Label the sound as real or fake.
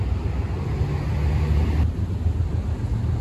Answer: real